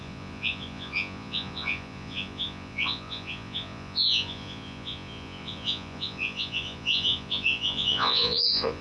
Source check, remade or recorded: remade